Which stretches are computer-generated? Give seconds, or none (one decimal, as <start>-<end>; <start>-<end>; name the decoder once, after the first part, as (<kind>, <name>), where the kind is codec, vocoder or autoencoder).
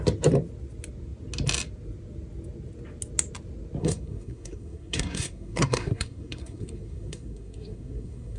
3.8-8.4 (codec, SNAC)